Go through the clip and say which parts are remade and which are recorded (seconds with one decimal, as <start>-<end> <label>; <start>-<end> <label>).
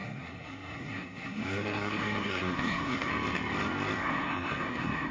0.0-3.1 remade; 3.1-4.0 recorded; 4.0-5.1 remade